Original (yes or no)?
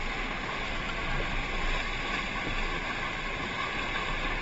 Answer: yes